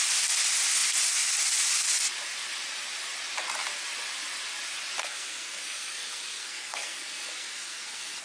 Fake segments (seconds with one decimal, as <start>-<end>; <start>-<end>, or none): 5.0-8.2